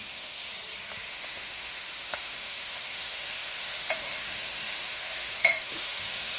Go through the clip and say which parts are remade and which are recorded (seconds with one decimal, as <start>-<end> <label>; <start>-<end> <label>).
0.0-0.4 remade; 0.4-1.1 recorded; 1.1-6.4 remade